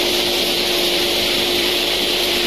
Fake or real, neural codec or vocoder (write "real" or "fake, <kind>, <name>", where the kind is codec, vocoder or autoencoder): fake, vocoder, BigVGAN v2